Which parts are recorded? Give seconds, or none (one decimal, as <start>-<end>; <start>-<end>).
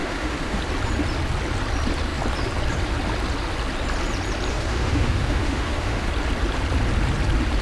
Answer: 0.6-4.5; 6.1-7.6